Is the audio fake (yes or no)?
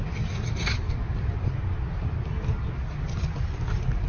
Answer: no